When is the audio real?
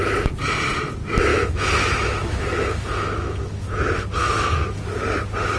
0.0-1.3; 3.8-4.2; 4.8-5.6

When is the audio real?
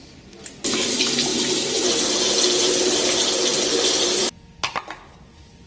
0.0-5.7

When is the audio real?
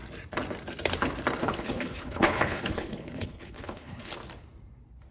0.0-1.4; 4.1-5.1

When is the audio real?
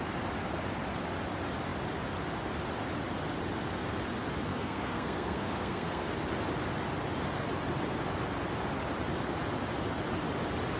0.0-4.5; 6.1-10.8